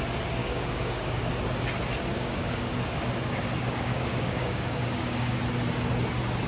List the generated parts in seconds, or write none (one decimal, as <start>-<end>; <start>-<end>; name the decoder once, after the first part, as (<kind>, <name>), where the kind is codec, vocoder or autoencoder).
0.4-1.3 (codec, DAC); 2.1-5.4